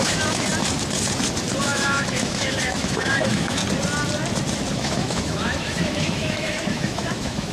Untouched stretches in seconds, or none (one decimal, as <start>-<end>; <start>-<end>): 0.5-1.6; 3.6-4.7